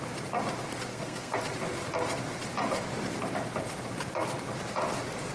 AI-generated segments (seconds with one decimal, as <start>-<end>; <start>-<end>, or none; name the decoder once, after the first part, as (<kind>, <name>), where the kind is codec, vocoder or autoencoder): 0.9-1.4 (codec, SNAC)